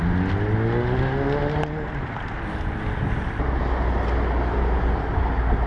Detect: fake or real real